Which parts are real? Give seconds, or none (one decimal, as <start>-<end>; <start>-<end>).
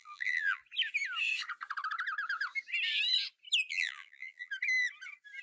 0.6-3.7; 4.5-5.4